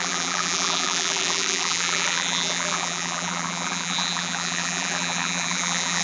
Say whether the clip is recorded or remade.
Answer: remade